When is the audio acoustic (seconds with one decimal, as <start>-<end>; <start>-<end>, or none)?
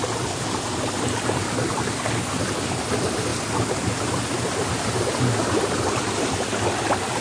0.0-7.2